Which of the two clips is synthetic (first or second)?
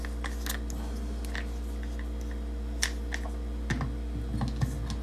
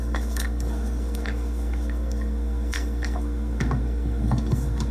second